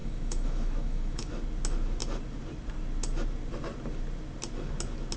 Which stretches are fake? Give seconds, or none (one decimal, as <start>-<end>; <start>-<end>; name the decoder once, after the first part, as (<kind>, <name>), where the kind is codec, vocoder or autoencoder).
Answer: 0.0-1.3 (autoencoder, DAC-VAE)